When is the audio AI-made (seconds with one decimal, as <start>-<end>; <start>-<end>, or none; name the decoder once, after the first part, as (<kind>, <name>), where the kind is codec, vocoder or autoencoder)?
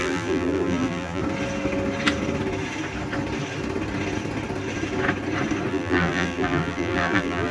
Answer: 0.0-1.2 (vocoder, BigVGAN v2); 5.7-7.5